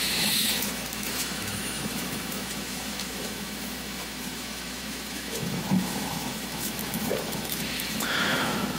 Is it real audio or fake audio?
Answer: fake